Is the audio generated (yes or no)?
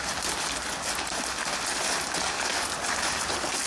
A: no